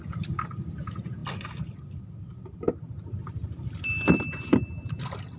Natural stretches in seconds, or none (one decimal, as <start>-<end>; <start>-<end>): 0.0-5.4